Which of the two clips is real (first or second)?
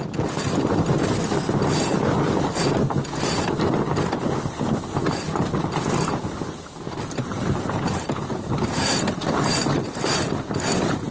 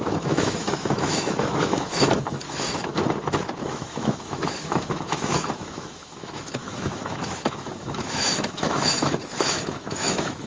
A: first